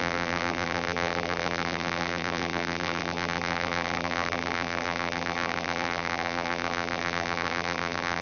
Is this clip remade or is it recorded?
remade